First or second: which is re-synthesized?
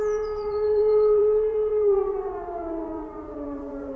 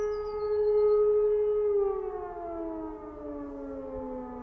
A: first